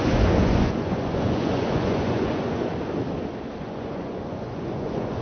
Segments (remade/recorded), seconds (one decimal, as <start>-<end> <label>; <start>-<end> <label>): 0.0-2.7 remade; 2.7-3.6 recorded; 3.6-5.2 remade